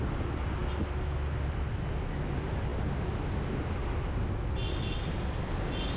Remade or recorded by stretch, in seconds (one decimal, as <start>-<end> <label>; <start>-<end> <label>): 0.0-6.0 recorded